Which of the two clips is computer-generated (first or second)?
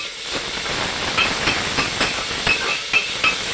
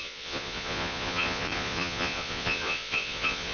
second